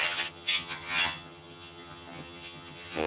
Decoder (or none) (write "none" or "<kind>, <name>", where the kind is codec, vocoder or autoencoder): vocoder, HiFi-GAN